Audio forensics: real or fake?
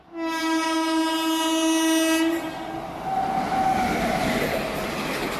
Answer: real